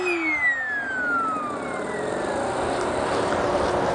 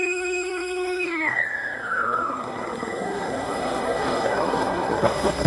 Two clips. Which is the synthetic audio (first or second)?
second